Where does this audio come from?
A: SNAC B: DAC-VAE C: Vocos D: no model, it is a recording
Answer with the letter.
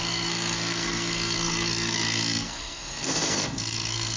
A